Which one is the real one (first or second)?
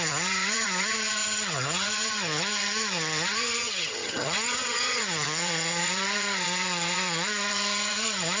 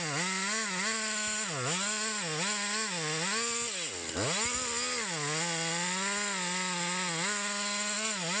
second